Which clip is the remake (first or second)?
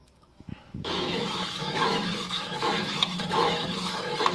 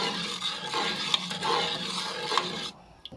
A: first